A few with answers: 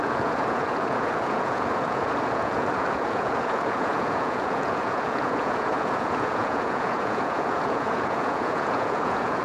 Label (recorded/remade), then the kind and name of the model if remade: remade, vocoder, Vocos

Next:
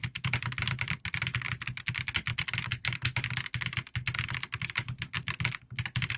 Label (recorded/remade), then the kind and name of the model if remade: recorded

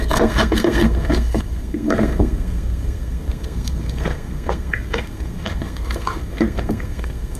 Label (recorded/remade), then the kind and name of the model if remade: remade, codec, SNAC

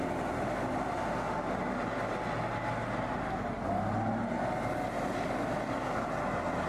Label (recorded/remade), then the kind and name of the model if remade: recorded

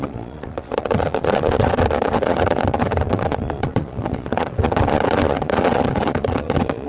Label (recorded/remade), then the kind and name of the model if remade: remade, vocoder, Vocos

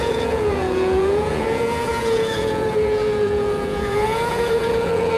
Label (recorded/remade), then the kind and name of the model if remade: remade, vocoder, Vocos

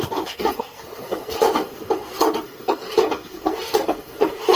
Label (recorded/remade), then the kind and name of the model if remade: remade, codec, SNAC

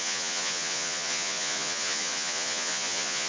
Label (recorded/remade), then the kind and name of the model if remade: remade, vocoder, Vocos